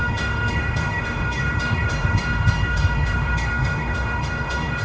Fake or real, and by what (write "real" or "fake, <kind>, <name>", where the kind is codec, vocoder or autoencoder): fake, autoencoder, DAC-VAE